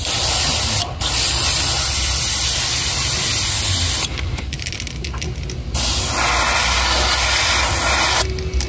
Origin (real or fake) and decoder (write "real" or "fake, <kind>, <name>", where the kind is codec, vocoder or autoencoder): real